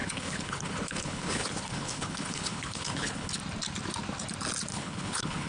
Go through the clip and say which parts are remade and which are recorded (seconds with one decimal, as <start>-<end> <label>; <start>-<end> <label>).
0.0-3.3 remade; 3.3-4.7 recorded; 4.7-5.5 remade